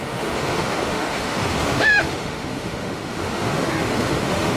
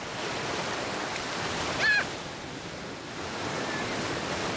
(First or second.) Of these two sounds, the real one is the second